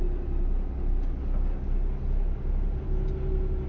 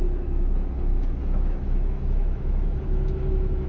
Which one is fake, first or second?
second